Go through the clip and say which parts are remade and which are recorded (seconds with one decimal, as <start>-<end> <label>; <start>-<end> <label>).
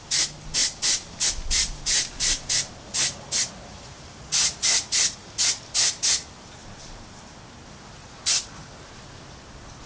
0.0-0.6 recorded; 0.6-2.6 remade; 2.6-9.9 recorded